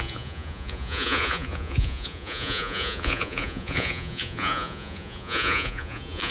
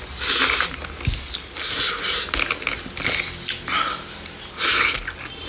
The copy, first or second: first